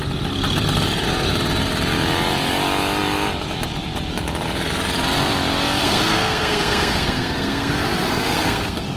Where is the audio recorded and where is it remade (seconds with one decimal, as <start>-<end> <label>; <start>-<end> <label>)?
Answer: 0.0-5.8 recorded; 5.8-9.0 remade